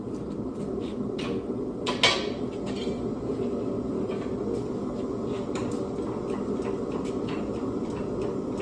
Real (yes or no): yes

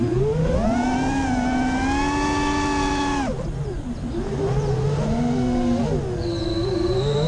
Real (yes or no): yes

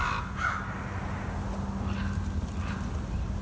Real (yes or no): yes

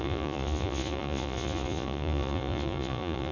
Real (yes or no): no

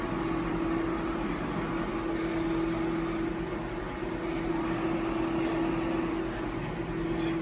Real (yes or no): yes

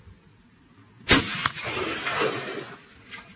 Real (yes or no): no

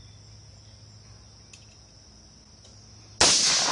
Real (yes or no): yes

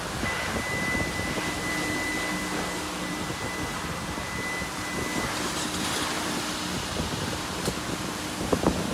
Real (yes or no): yes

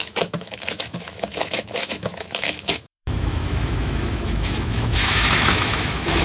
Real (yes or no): no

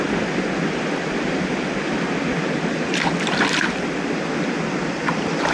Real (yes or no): yes